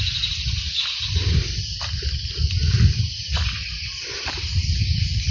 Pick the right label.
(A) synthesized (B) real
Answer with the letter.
B